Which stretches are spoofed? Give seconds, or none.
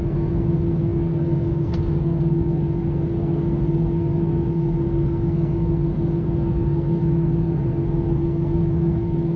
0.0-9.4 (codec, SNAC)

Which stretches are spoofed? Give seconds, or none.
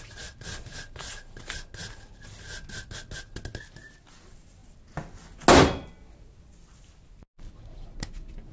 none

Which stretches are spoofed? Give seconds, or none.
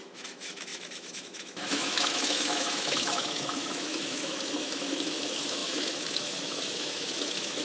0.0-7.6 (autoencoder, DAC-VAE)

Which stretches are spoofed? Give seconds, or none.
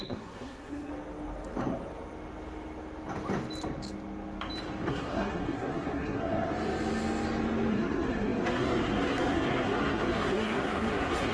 0.0-0.9 (codec, SNAC); 4.9-6.5; 7.7-11.3